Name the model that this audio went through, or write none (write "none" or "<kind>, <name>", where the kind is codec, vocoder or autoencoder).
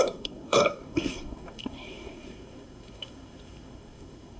codec, SNAC